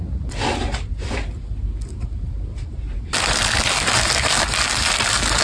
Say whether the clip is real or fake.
real